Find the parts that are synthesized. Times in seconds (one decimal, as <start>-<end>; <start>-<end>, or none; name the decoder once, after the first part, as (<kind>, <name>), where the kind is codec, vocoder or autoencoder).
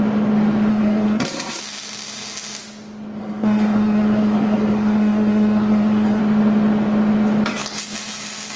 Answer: 0.7-1.6 (codec, SNAC); 3.2-6.2